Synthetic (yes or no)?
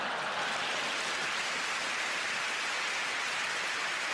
yes